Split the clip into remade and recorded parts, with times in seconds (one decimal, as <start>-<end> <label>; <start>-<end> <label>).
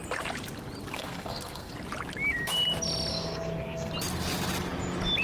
0.0-0.9 recorded; 0.9-1.7 remade; 1.7-3.1 recorded; 3.1-3.9 remade; 3.9-5.2 recorded